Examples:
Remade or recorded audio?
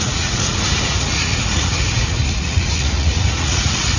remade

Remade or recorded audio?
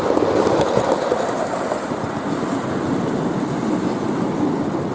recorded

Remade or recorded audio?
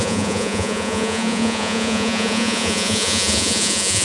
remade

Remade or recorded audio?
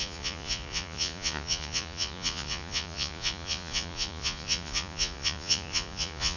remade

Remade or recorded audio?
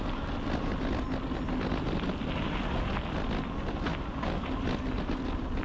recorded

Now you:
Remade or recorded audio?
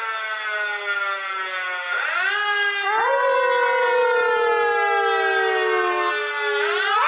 recorded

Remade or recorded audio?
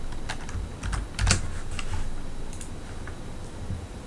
recorded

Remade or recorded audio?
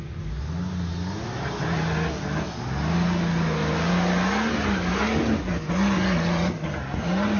recorded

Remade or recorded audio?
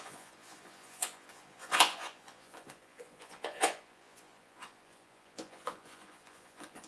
remade